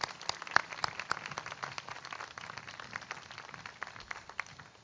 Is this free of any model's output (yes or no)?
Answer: yes